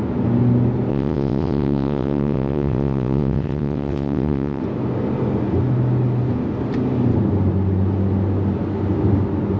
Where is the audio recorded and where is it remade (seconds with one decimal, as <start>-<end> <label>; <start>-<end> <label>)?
0.0-0.9 recorded; 0.9-4.6 remade; 4.6-9.6 recorded